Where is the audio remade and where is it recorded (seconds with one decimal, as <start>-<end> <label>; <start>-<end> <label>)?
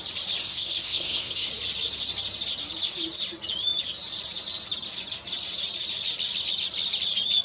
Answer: 0.0-0.4 recorded; 0.4-1.5 remade; 1.5-7.4 recorded